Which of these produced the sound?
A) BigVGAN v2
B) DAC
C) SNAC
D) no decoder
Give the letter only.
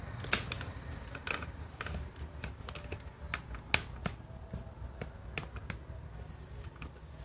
D